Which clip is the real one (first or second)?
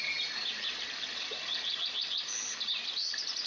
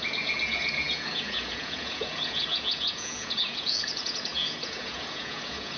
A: first